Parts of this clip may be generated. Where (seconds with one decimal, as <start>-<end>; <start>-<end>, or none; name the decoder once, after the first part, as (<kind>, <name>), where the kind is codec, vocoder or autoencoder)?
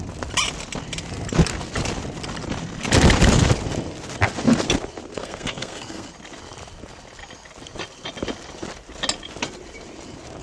5.1-6.1 (codec, SNAC)